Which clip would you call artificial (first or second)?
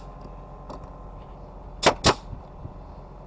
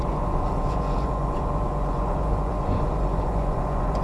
second